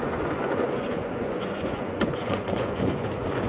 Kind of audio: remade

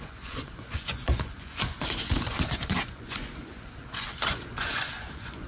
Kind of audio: remade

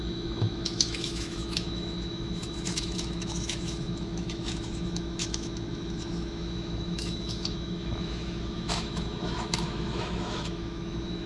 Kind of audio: remade